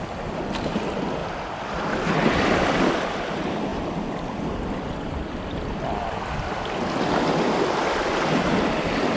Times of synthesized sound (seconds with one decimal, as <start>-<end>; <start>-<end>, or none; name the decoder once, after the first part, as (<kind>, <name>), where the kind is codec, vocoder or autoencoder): 1.2-2.9 (vocoder, BigVGAN v2); 3.7-8.4